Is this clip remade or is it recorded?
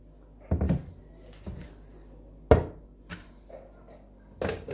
recorded